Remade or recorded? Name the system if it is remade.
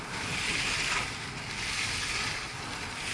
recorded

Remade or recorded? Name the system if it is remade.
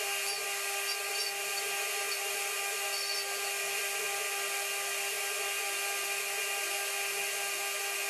recorded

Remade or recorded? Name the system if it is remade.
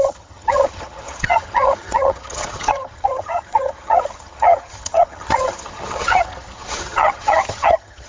remade, vocoder, HiFi-GAN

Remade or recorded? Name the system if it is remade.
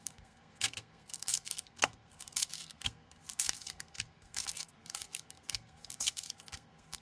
remade, codec, SNAC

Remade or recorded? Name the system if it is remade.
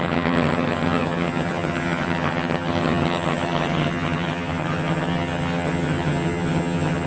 remade, vocoder, HiFi-GAN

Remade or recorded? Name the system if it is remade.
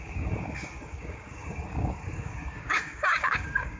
remade, codec, DAC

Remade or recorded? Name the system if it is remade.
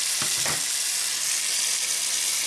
recorded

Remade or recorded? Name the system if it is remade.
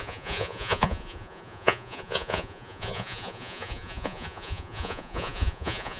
remade, vocoder, Vocos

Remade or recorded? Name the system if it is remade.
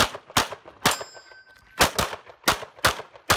recorded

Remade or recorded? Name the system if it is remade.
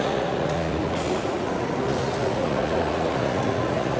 remade, vocoder, Vocos